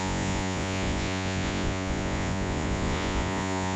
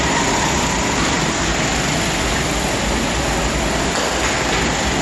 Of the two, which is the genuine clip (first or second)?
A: second